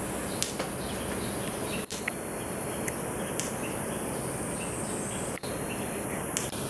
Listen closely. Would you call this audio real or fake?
real